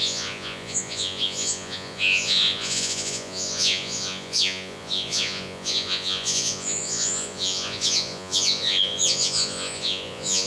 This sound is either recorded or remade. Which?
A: remade